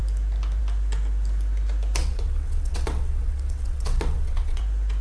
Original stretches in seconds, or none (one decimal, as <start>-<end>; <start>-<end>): 0.0-2.0; 4.6-5.0